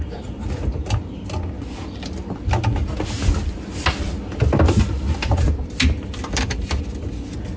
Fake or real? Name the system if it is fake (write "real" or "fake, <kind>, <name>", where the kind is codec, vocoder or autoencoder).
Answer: real